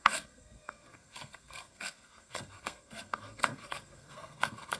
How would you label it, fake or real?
fake